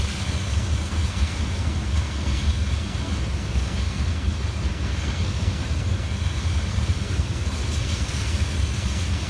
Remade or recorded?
remade